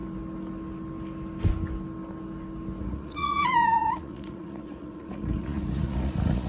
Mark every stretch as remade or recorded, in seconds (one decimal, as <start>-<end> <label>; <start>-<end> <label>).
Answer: 0.0-2.8 recorded; 2.8-6.5 remade